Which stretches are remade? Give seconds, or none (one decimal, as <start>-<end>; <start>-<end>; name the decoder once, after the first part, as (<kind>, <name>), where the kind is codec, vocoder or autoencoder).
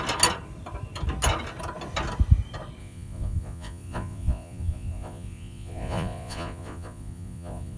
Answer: 2.8-7.8 (vocoder, Vocos)